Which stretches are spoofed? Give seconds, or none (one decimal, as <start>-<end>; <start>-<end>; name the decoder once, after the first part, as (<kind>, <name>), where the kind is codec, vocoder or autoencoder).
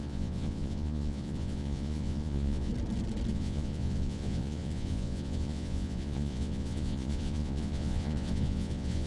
0.0-2.7 (vocoder, Vocos); 3.3-9.1